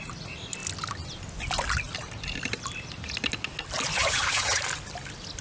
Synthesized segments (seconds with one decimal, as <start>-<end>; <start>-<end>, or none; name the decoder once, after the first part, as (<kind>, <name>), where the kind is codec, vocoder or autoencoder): 3.9-4.6 (vocoder, HiFi-GAN)